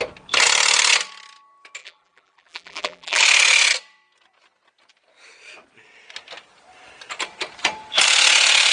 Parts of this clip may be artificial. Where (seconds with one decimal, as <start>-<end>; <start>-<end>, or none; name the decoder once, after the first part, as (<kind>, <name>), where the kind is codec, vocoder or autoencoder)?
1.8-3.2 (vocoder, BigVGAN v2)